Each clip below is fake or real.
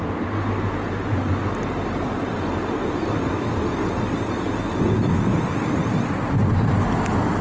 real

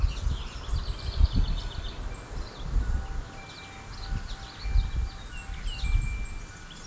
real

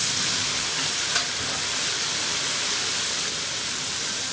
real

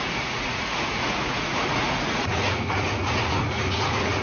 fake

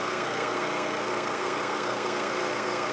fake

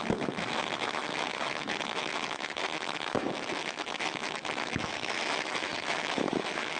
fake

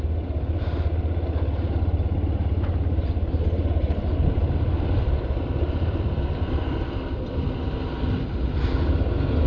real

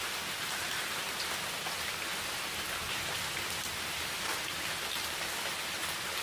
real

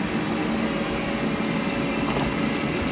real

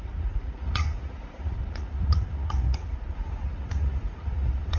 fake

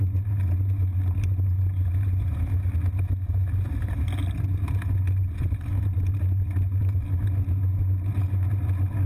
real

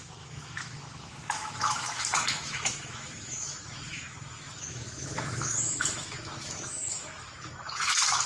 fake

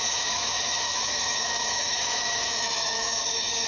fake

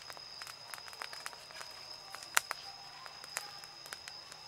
real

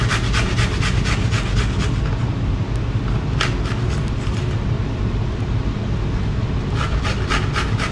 real